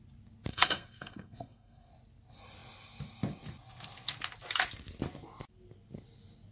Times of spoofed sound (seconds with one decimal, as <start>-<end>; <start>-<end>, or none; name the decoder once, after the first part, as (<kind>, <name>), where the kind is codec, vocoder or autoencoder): 0.5-1.9 (codec, SNAC)

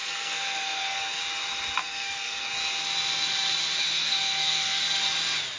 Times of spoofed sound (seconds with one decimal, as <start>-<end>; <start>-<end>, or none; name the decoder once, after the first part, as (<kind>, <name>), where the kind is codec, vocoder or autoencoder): 0.0-1.2 (codec, SNAC); 1.8-2.5; 3.8-5.0

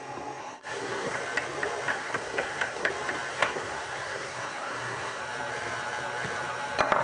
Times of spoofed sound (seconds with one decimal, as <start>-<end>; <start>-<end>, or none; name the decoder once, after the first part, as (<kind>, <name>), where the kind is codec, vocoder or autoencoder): 0.4-1.2 (codec, SNAC); 1.9-2.9; 3.3-5.2

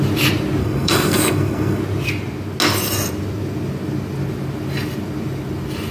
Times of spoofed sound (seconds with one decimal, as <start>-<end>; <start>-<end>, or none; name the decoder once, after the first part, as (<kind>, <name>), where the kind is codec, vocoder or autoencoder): 0.6-1.8 (codec, SNAC)

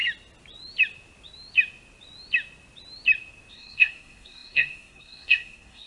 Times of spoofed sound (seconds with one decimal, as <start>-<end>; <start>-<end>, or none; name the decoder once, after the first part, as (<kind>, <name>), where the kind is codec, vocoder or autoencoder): 3.5-5.9 (codec, SNAC)

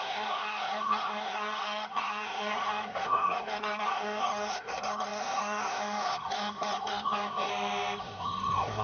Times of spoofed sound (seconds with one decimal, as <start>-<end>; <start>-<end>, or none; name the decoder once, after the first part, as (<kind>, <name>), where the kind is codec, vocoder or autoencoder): 0.0-7.5 (codec, SNAC); 8.0-8.8